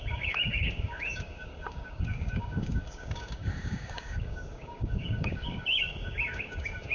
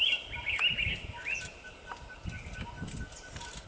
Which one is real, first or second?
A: second